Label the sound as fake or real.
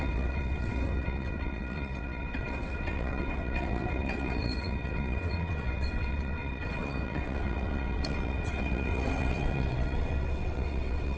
fake